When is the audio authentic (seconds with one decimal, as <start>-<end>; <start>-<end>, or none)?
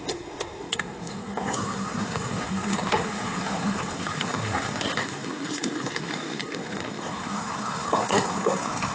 none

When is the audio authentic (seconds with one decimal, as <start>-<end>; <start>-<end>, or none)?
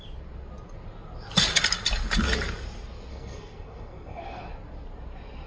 0.0-3.1; 4.5-5.5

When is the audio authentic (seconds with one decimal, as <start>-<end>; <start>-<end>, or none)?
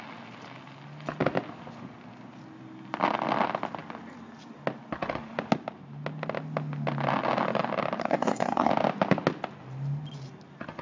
0.0-8.0; 8.7-10.8